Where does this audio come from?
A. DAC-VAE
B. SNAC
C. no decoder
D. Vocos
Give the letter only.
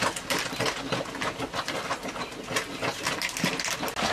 C